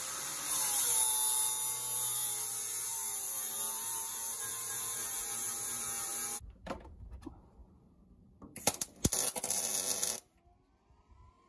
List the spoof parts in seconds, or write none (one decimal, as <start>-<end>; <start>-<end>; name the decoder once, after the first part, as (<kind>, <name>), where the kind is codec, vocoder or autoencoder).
2.9-6.1 (vocoder, BigVGAN v2); 7.6-8.8